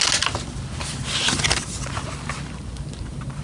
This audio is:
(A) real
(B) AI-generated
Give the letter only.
A